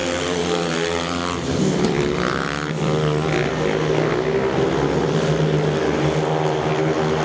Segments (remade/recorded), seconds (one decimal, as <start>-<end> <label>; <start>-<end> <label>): 0.0-3.5 remade; 3.5-7.2 recorded